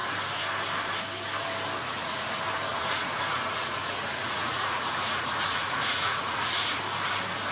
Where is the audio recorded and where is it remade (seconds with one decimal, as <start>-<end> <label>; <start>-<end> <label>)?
0.0-1.8 recorded; 1.8-2.3 remade; 2.3-2.7 recorded; 2.7-6.8 remade; 6.8-7.5 recorded